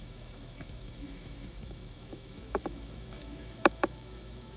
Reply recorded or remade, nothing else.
remade